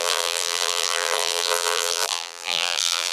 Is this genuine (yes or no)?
no